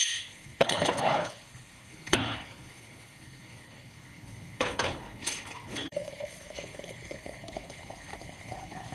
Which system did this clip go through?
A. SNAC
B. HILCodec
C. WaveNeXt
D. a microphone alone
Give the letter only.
B